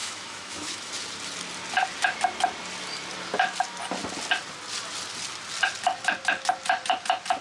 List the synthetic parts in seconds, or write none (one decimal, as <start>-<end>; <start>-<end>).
0.0-0.9